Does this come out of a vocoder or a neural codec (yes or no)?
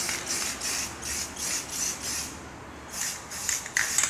no